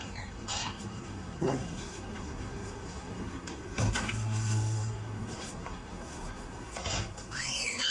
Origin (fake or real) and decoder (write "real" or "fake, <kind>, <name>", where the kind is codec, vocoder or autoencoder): fake, codec, SNAC